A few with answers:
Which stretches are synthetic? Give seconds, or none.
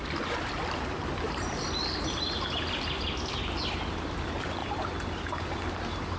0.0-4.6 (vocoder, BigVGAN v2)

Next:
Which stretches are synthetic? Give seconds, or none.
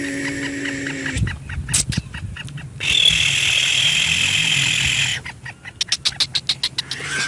none